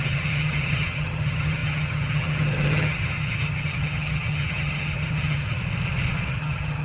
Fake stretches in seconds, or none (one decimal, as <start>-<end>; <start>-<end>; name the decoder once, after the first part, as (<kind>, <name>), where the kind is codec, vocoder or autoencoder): 0.0-5.6 (vocoder, HiFi-GAN); 6.3-6.8